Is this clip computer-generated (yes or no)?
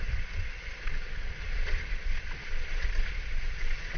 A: yes